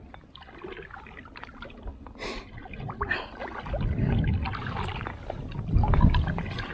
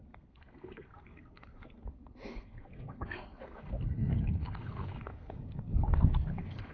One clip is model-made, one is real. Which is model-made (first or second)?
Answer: second